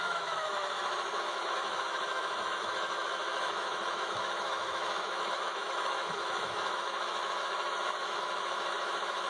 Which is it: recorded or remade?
remade